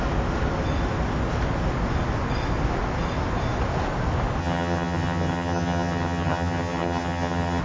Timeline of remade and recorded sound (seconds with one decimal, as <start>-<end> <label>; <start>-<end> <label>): 0.0-4.4 recorded; 4.4-7.6 remade